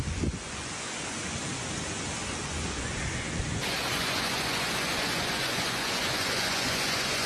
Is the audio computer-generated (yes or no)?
yes